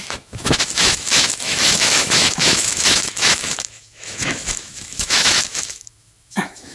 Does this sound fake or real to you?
fake